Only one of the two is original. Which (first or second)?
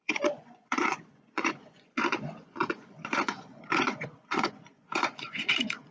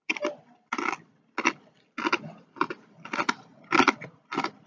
second